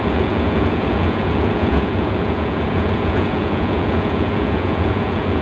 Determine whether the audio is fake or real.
fake